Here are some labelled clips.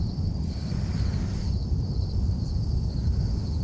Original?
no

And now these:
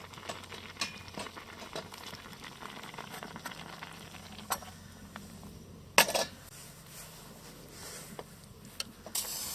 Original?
yes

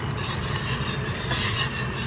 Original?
yes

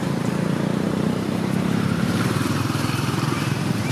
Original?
no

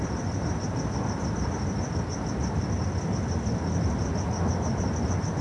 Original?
yes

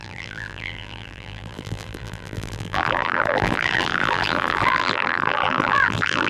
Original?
no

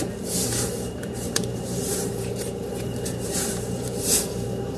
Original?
no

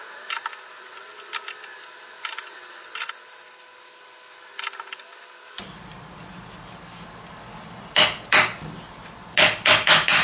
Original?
yes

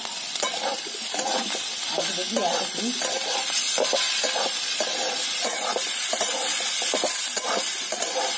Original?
no